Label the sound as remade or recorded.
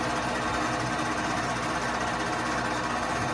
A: recorded